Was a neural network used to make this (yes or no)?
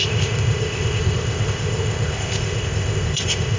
yes